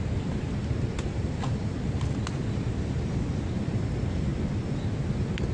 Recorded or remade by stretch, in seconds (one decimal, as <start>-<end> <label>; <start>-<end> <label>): 0.0-5.5 recorded